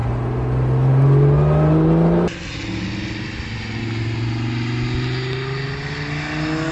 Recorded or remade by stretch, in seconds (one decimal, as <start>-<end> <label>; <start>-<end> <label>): 0.0-6.7 recorded